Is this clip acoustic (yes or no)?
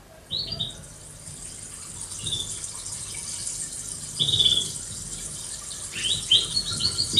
yes